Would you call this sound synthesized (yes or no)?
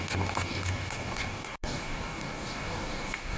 yes